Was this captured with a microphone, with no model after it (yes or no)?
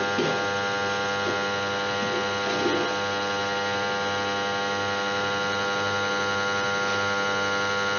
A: yes